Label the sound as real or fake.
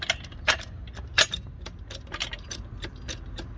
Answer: real